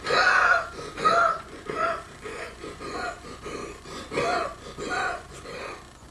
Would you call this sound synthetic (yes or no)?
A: yes